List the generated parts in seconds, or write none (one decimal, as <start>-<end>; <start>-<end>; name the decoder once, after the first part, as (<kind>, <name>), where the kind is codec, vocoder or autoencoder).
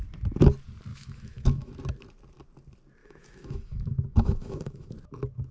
0.9-1.7 (autoencoder, DAC-VAE); 3.0-4.9